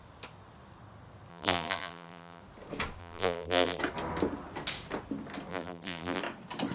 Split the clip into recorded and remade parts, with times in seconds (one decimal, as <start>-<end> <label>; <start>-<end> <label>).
0.0-1.3 recorded; 1.3-2.4 remade; 2.4-3.0 recorded; 3.0-3.8 remade; 3.8-5.5 recorded; 5.5-6.2 remade; 6.2-6.7 recorded